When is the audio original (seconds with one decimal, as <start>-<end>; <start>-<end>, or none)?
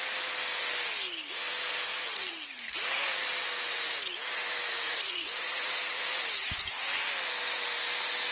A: 0.0-1.9; 3.2-4.4; 6.7-8.3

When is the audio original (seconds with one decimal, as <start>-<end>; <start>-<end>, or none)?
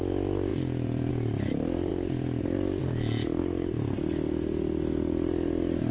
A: 0.0-0.5; 1.1-1.9; 2.8-3.4